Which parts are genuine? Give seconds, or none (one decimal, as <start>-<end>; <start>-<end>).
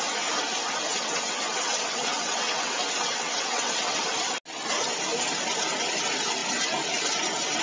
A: 0.0-0.9; 4.0-7.6